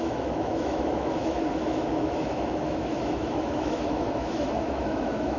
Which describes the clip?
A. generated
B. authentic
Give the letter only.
A